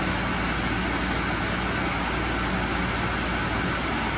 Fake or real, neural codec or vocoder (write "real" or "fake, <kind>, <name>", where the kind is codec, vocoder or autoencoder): real